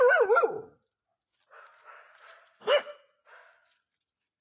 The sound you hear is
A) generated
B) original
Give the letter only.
B